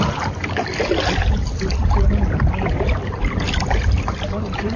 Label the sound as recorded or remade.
recorded